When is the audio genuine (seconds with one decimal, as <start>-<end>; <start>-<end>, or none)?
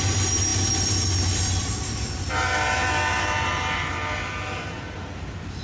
0.0-5.6